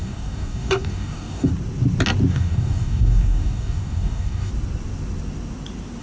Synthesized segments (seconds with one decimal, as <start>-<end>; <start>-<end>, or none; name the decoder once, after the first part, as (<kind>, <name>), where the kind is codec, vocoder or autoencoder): 0.0-1.5 (codec, DAC); 2.3-4.5